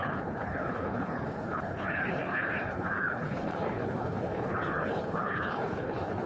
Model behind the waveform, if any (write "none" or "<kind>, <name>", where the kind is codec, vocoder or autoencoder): codec, HILCodec